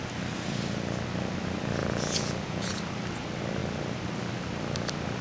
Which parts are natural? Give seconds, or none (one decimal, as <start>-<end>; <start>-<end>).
0.0-1.8; 2.8-5.2